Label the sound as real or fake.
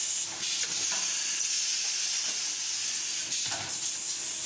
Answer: real